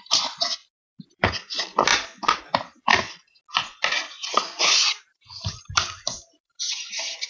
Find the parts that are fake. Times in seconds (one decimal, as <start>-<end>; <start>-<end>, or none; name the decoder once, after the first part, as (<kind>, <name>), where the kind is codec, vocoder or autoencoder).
0.0-2.9 (vocoder, BigVGAN v2); 4.6-7.3